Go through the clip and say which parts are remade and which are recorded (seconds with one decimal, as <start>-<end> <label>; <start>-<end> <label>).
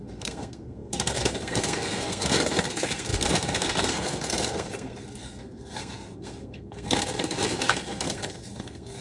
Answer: 0.0-9.0 remade